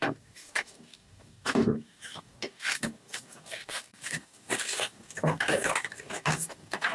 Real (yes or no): no